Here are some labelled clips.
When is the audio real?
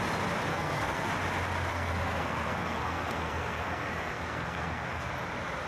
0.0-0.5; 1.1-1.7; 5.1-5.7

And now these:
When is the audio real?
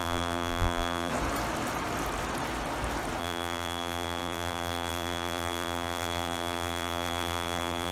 1.1-3.2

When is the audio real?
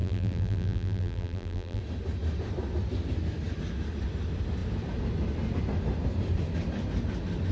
1.8-7.5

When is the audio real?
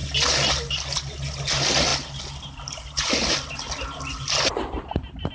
0.0-5.3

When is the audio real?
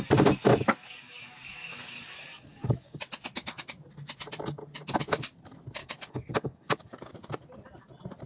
0.0-0.5; 3.0-5.8; 7.1-8.3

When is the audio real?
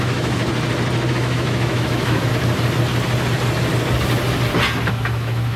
0.4-1.1; 2.3-4.9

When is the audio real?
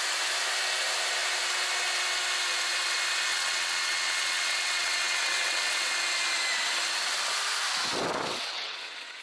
0.0-3.3; 5.9-8.3